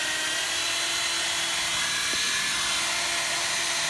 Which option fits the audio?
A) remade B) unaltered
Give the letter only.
B